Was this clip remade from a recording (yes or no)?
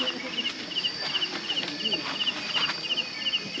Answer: yes